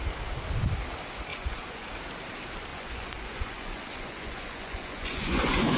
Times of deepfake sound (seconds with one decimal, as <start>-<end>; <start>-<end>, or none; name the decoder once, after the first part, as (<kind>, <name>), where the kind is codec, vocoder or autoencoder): 1.3-1.9 (vocoder, Vocos); 2.7-5.8